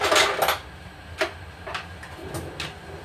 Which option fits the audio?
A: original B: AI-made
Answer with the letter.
A